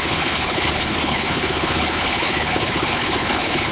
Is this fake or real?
fake